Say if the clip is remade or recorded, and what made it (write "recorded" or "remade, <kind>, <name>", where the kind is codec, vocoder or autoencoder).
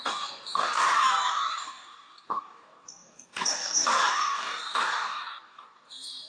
remade, codec, DAC